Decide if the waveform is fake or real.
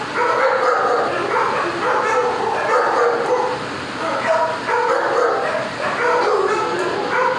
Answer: real